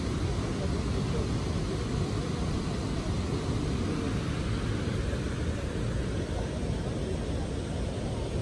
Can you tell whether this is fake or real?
real